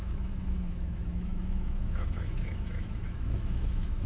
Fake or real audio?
fake